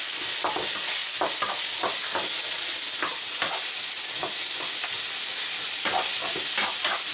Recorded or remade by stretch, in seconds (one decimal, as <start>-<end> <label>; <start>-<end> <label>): 0.0-7.1 recorded